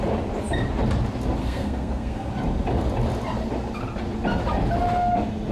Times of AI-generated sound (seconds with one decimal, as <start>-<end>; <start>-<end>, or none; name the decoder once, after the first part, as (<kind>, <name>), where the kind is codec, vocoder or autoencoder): 1.4-2.3 (codec, SNAC)